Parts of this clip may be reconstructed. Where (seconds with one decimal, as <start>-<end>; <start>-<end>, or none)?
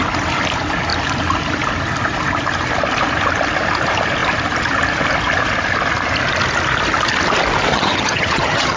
7.7-8.8